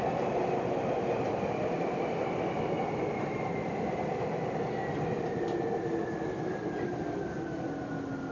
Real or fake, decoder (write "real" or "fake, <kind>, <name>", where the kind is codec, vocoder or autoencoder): real